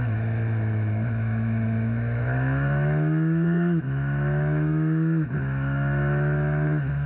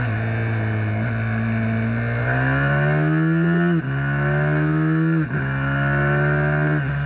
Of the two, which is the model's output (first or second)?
first